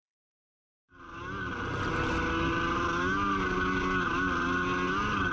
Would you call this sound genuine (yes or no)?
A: yes